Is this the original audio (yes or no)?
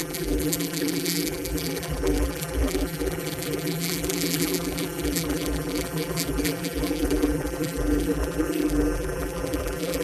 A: no